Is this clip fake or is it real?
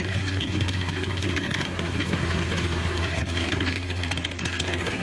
fake